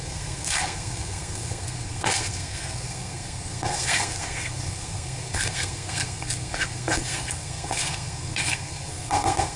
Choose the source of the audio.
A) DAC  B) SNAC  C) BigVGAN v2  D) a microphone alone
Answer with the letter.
B